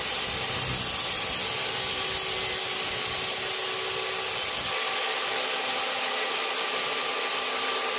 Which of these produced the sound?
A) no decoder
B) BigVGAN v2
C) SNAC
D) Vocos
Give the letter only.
A